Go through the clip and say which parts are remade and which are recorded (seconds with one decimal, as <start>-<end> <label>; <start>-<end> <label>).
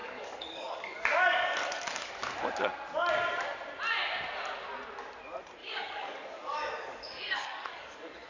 0.0-2.1 remade; 2.1-5.6 recorded; 5.6-8.3 remade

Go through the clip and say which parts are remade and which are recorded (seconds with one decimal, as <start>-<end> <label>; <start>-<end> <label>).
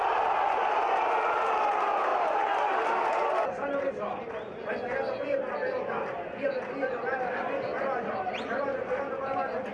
0.0-9.7 recorded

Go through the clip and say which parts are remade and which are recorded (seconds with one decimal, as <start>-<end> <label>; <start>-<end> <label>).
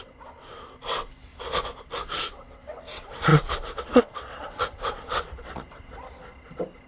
0.0-1.3 remade; 1.3-2.3 recorded; 2.3-5.9 remade; 5.9-6.9 recorded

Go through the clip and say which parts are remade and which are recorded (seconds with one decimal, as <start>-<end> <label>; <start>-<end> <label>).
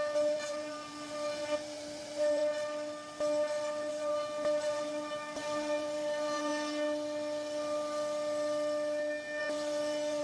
0.0-2.4 remade; 2.4-3.9 recorded; 3.9-6.5 remade; 6.5-9.4 recorded; 9.4-10.2 remade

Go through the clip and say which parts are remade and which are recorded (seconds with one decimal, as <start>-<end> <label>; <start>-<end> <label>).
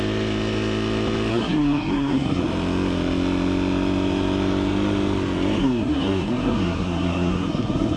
0.0-1.3 recorded; 1.3-2.4 remade; 2.4-5.6 recorded; 5.6-8.0 remade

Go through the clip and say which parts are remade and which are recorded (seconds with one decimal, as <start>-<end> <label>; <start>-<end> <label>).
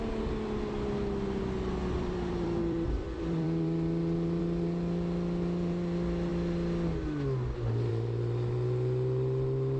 0.0-1.8 recorded; 1.8-4.4 remade; 4.4-9.8 recorded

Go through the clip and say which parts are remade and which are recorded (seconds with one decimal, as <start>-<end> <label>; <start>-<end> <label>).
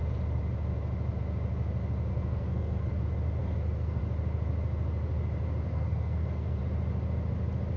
0.0-2.1 recorded; 2.1-2.9 remade; 2.9-3.4 recorded; 3.4-4.0 remade; 4.0-5.7 recorded; 5.7-6.6 remade; 6.6-7.8 recorded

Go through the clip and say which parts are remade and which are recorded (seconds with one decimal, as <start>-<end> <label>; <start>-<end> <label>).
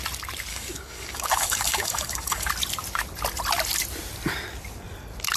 0.0-0.5 recorded; 0.5-2.5 remade; 2.5-5.4 recorded